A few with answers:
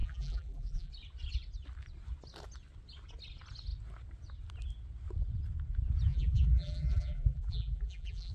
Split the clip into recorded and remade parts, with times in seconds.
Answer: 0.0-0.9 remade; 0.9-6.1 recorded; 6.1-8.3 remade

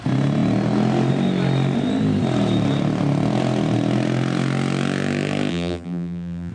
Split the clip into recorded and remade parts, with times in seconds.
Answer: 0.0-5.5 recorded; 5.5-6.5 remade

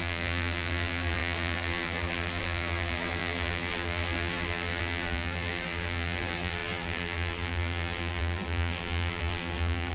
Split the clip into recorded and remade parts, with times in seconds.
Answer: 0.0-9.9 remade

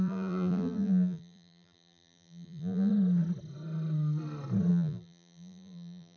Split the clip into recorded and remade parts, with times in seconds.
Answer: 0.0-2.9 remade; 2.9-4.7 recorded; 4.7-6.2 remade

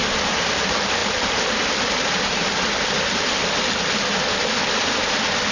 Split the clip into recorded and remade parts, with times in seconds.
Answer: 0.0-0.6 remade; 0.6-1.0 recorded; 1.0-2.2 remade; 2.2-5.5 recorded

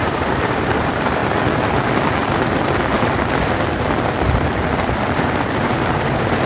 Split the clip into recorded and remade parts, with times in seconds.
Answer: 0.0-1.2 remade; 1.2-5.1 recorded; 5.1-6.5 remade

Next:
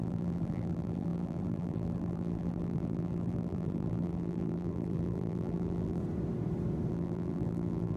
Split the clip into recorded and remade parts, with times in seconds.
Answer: 0.0-6.0 remade; 6.0-6.9 recorded; 6.9-8.0 remade